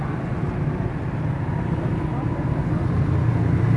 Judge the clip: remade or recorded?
recorded